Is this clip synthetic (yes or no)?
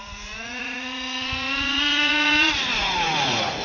yes